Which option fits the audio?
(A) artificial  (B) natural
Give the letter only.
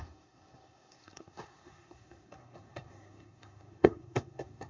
A